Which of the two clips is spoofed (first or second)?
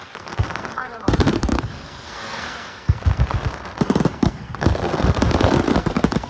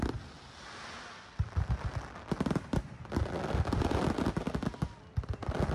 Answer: first